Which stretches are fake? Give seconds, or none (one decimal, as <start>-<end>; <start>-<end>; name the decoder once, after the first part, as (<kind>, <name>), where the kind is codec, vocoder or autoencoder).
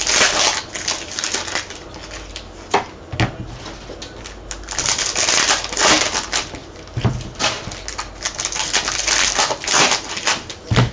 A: none